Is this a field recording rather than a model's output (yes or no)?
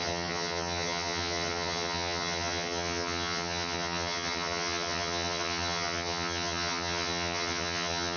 no